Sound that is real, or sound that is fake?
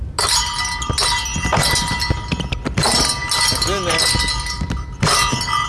real